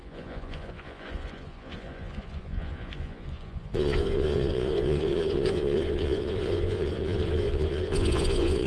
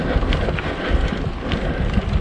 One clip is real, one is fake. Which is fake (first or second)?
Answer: first